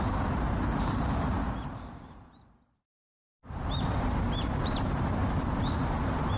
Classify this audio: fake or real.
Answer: fake